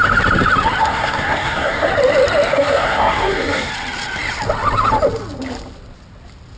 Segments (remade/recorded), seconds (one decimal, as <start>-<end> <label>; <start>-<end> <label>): 0.0-0.8 recorded; 0.8-1.9 remade; 1.9-2.5 recorded; 2.5-3.7 remade; 3.7-6.6 recorded